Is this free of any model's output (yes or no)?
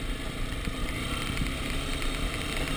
yes